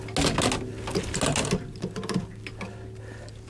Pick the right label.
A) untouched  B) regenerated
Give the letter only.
A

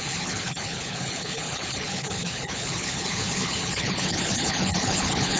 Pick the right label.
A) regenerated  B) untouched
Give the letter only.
A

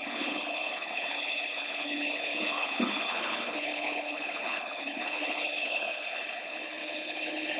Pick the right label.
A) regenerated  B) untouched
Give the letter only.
A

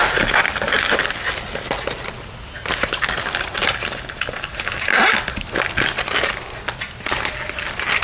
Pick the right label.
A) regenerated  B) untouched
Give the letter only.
B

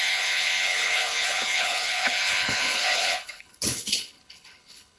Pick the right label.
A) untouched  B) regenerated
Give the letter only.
B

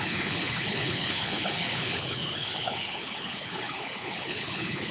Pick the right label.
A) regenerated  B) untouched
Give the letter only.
A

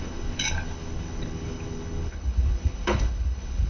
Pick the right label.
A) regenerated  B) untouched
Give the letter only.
A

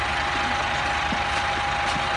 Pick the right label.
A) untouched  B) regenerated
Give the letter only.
A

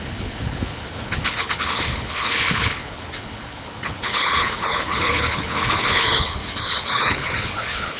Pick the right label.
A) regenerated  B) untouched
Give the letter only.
A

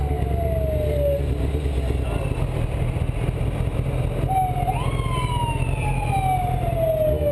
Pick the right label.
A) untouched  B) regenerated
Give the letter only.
A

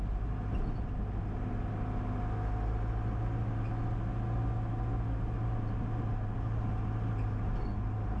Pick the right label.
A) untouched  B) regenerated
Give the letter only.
A